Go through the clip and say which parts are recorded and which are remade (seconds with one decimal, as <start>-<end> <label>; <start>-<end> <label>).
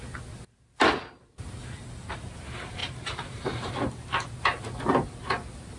0.0-1.6 recorded; 1.6-2.3 remade; 2.3-2.8 recorded; 2.8-3.7 remade; 3.7-5.8 recorded